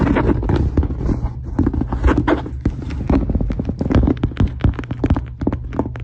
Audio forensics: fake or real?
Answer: real